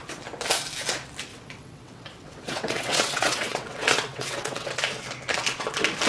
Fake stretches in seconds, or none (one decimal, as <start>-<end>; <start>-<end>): 1.3-4.7